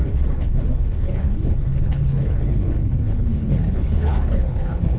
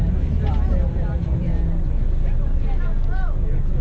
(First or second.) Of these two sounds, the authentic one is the second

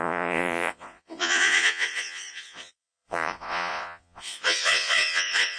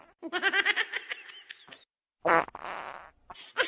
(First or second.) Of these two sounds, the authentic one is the second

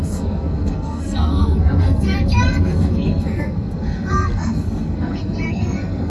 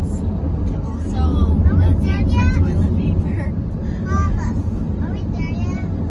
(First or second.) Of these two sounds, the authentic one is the second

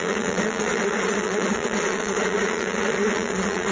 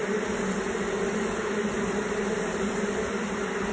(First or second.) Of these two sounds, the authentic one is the second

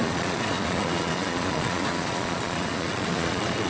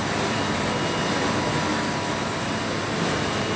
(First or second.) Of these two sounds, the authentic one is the second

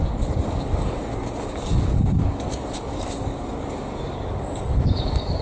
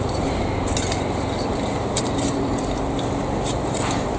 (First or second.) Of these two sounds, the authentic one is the second